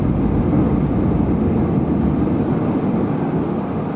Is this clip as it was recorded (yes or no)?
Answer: yes